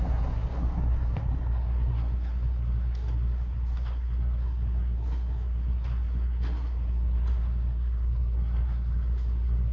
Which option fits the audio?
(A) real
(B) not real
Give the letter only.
B